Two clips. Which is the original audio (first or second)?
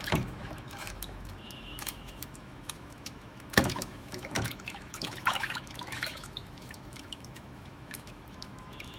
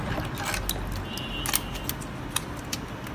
second